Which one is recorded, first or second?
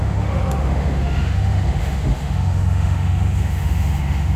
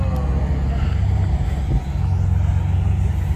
second